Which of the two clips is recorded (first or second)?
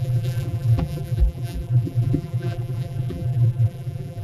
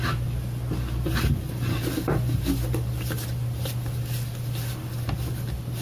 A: second